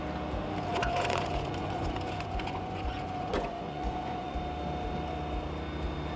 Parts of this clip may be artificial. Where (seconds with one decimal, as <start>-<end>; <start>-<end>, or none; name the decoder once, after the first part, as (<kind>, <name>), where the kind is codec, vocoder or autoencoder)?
0.7-4.4 (vocoder, Vocos)